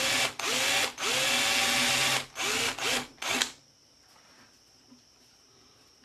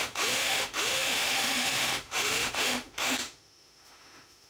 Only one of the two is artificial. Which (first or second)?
second